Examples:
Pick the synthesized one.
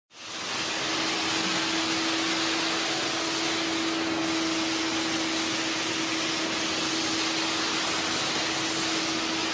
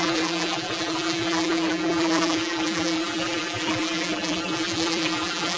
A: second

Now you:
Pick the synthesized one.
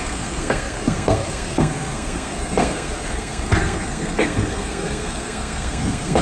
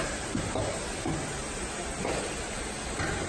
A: first